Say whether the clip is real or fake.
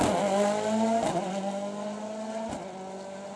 real